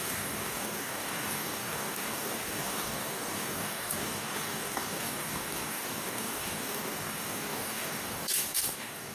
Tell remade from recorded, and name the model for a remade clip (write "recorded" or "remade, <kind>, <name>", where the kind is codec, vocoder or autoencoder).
remade, codec, DAC